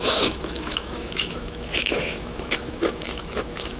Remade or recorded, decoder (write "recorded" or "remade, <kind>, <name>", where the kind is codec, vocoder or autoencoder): remade, autoencoder, DAC-VAE